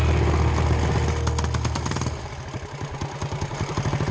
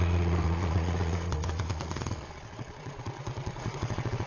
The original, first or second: first